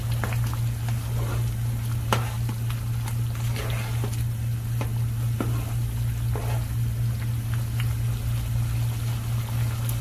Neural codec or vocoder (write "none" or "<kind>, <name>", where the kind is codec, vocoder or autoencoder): none